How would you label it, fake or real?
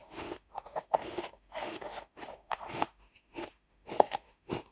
fake